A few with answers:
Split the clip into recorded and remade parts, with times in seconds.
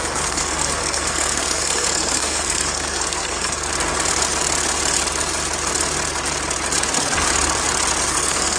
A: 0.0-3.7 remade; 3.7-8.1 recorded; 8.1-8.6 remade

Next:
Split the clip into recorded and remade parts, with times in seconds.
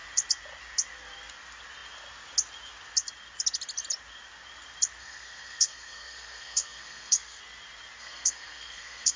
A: 0.0-5.0 recorded; 5.0-7.4 remade; 7.4-8.0 recorded; 8.0-9.2 remade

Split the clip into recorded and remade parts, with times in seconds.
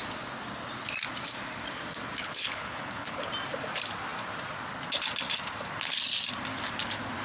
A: 0.0-2.2 recorded; 2.2-3.3 remade; 3.3-7.2 recorded